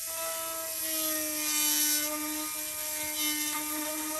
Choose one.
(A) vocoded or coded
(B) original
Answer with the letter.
B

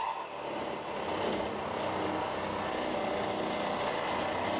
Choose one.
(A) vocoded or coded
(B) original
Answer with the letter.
B